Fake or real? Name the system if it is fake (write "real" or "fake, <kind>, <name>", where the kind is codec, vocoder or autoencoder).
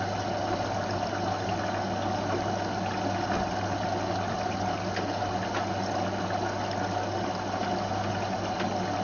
real